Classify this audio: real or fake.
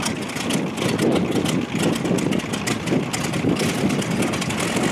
real